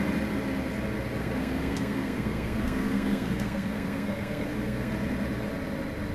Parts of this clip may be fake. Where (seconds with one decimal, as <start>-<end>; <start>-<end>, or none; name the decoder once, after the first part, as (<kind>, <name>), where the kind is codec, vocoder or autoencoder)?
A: 1.2-4.9 (codec, SNAC)